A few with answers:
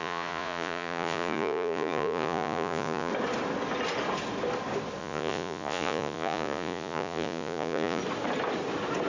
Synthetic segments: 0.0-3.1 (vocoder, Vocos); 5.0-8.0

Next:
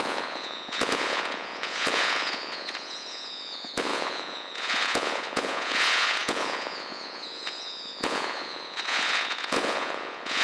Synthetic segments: 0.0-10.4 (vocoder, Vocos)

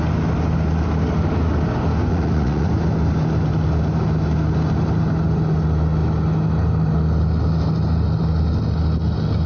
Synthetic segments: 2.1-2.7 (vocoder, Vocos)